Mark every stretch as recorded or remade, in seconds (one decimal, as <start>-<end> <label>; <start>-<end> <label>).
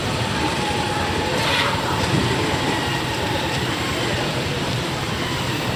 0.0-2.2 remade; 2.2-5.8 recorded